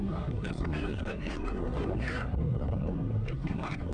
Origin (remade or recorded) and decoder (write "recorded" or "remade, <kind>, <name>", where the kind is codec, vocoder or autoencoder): remade, codec, SNAC